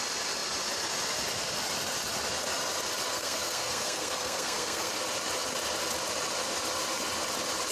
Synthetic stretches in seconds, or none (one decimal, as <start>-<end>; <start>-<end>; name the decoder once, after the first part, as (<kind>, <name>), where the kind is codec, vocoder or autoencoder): 3.1-4.9 (codec, SNAC)

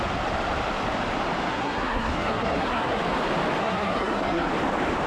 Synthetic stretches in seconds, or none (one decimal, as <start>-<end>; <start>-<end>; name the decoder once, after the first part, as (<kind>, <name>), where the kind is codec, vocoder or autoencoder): 1.5-3.0 (codec, SNAC); 3.6-4.5

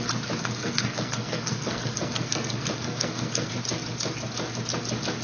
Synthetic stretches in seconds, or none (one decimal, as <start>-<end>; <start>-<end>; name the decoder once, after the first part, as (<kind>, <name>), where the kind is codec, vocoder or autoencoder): 0.4-3.5 (codec, SNAC)

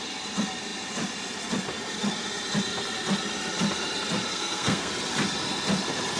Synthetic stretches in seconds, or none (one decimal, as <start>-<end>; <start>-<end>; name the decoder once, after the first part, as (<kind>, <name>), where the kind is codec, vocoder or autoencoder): 4.3-4.9 (codec, SNAC)